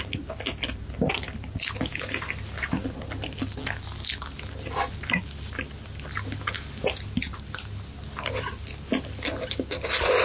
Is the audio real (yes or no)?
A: yes